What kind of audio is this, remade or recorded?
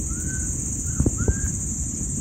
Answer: recorded